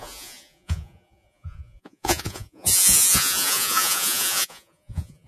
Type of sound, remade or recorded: remade